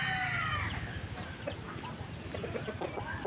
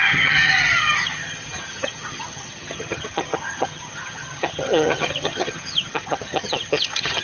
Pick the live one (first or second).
first